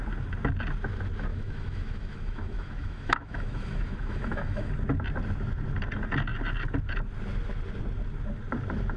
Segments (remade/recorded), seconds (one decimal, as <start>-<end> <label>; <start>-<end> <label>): 0.0-1.3 recorded; 1.3-4.7 remade; 4.7-9.0 recorded